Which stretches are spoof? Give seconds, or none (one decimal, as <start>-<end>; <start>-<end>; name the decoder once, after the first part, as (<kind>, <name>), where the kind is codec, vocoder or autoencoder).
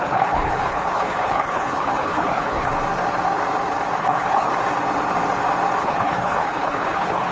0.0-2.7 (codec, HILCodec); 4.0-4.5; 5.8-7.3